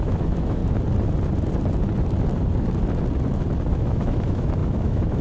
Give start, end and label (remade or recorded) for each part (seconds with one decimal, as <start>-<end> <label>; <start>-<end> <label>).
0.0-0.6 remade; 0.6-3.7 recorded; 3.7-5.2 remade